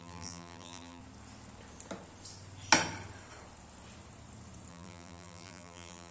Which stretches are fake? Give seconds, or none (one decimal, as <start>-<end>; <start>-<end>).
0.0-1.0; 4.7-6.1